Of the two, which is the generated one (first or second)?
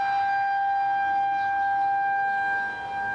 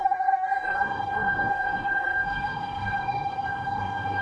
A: second